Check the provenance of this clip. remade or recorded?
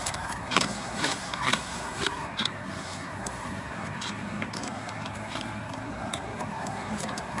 remade